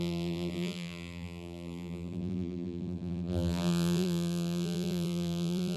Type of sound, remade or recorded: remade